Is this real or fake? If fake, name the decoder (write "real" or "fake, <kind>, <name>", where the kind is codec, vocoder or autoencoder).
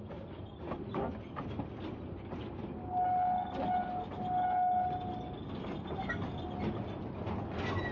real